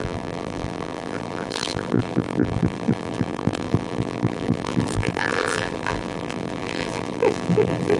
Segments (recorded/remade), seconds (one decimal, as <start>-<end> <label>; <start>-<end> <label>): 0.0-8.0 remade